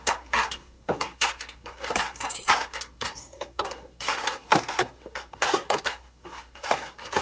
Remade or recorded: remade